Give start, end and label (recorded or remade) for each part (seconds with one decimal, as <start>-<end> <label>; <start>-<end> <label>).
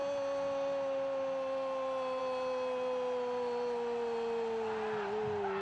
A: 0.0-5.6 recorded